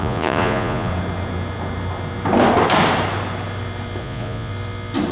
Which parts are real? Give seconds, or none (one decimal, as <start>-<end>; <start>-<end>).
0.9-4.0; 4.5-5.1